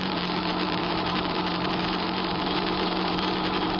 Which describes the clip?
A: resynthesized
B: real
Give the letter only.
A